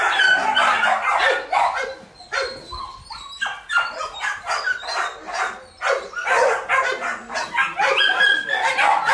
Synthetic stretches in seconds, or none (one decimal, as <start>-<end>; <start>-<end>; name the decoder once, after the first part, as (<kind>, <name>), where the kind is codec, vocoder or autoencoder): none